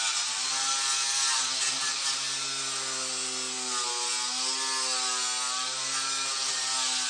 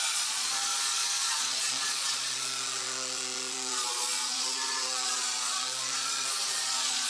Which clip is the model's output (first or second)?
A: second